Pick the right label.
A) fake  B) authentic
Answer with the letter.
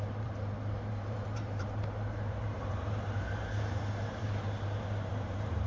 A